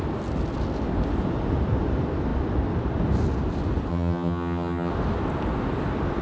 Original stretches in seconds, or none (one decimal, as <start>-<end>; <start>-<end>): 0.0-3.9; 4.9-6.2